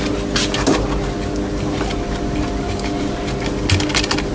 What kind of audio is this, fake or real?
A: real